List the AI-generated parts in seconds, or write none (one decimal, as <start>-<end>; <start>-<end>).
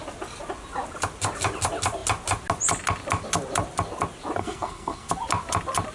4.4-5.1